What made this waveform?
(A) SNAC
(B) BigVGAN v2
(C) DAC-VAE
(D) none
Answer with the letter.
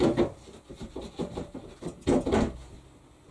D